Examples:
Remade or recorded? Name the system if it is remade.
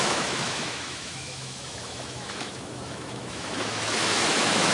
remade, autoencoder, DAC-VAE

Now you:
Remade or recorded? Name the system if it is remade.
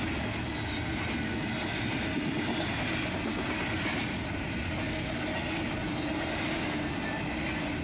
recorded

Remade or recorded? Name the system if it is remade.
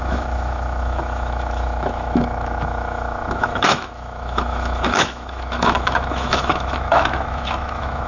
remade, autoencoder, DAC-VAE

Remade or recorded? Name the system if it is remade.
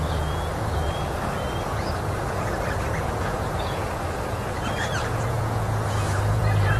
remade, vocoder, Vocos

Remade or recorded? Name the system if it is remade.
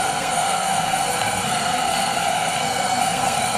remade, codec, SNAC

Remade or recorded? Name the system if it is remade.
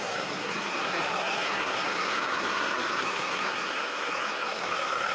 remade, codec, SNAC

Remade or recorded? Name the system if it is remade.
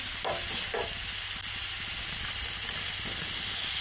recorded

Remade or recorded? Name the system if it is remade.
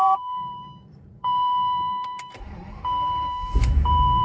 remade, vocoder, BigVGAN v2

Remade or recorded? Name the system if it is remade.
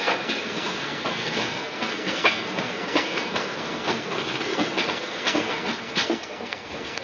remade, codec, SNAC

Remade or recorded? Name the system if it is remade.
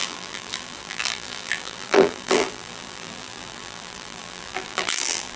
remade, vocoder, BigVGAN v2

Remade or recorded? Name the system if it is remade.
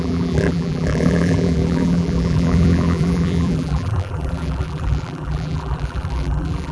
remade, vocoder, BigVGAN v2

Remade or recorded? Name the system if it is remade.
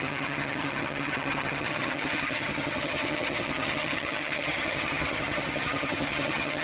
remade, vocoder, HiFi-GAN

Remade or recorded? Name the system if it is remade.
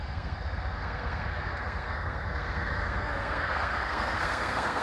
remade, codec, SNAC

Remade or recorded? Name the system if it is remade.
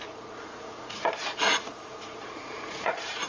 remade, vocoder, Vocos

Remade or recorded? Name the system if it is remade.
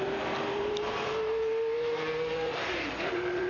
remade, vocoder, BigVGAN v2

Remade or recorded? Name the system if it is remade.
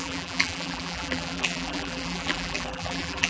remade, vocoder, BigVGAN v2